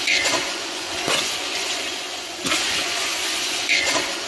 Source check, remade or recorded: remade